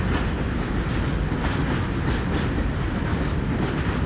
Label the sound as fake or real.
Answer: real